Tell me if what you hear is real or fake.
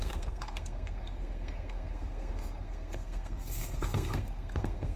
fake